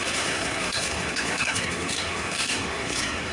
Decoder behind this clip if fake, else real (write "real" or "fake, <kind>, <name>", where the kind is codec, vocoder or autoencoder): fake, codec, SNAC